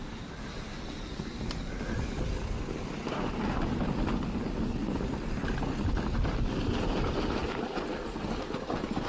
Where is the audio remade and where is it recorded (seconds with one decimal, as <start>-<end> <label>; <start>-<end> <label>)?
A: 0.0-9.1 recorded